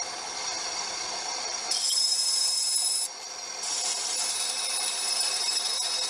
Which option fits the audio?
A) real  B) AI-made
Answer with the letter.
B